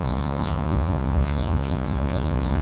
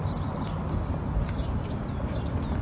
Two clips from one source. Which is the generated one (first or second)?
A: first